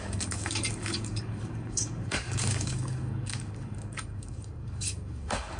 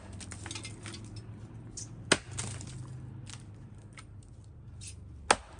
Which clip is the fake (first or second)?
first